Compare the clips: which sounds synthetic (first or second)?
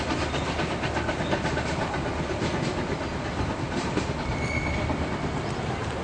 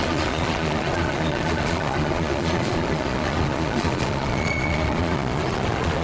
second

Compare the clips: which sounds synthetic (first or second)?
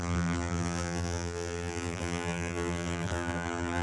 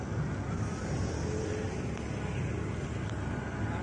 first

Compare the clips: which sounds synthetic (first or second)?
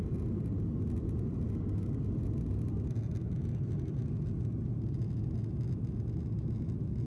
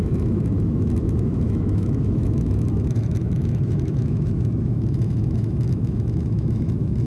second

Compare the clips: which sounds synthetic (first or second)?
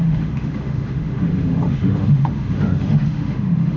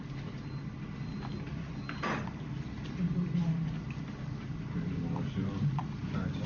first